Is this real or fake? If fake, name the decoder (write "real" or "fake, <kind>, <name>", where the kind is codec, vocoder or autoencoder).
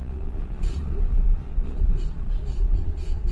fake, vocoder, Vocos